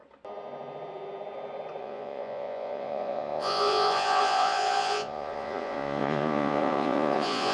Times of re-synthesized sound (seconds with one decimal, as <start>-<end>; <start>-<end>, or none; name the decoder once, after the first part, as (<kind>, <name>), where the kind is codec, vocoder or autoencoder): 1.8-7.5 (vocoder, Vocos)